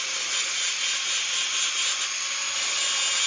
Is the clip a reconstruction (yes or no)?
no